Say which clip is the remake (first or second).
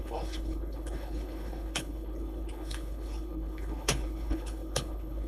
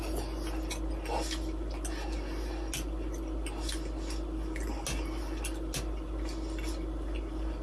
first